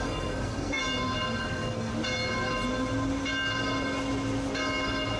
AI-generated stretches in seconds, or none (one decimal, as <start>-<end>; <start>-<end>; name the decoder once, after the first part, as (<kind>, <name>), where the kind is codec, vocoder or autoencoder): 0.0-0.8 (codec, SNAC); 1.4-1.9